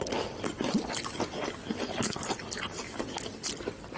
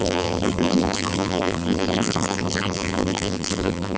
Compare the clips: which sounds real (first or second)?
first